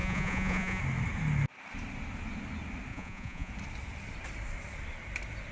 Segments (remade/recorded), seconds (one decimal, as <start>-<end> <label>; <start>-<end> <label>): 0.0-0.8 remade; 0.8-2.9 recorded; 2.9-3.5 remade; 3.5-5.5 recorded